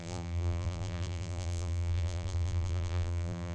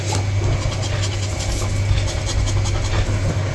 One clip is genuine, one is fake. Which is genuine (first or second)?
second